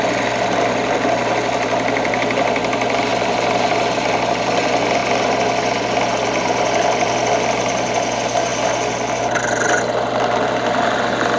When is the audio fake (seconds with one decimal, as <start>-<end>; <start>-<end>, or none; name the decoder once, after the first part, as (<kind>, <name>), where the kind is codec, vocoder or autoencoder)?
none